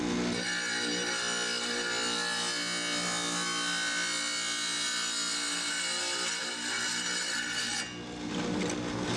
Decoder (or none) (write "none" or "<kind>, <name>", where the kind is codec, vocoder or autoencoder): none